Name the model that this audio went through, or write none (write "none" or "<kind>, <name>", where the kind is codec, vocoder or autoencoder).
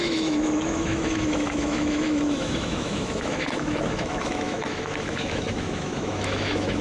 autoencoder, DAC-VAE